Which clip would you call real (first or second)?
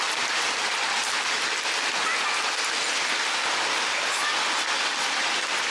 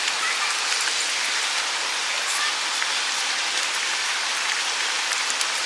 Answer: first